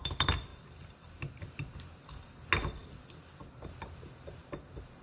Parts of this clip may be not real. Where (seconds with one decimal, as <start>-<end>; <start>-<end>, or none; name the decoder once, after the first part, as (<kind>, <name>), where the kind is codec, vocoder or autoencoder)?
none